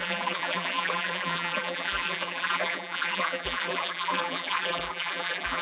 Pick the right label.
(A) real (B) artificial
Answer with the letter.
B